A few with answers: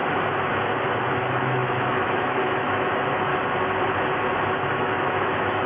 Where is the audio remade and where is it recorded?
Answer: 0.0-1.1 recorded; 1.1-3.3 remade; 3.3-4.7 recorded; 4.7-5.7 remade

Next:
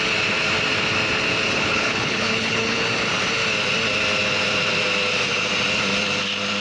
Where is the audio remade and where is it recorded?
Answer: 0.0-1.5 recorded; 1.5-2.8 remade; 2.8-6.6 recorded